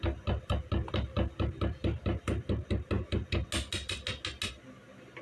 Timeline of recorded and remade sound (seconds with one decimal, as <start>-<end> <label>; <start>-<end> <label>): 0.0-5.2 recorded